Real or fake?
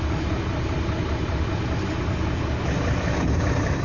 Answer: real